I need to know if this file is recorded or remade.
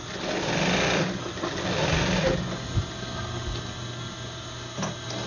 recorded